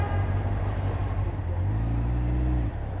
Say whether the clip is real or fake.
real